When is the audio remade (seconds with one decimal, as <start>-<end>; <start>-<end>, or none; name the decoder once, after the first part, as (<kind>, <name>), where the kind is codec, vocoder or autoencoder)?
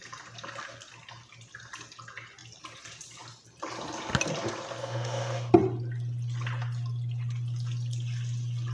4.8-5.5 (autoencoder, DAC-VAE)